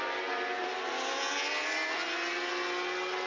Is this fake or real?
real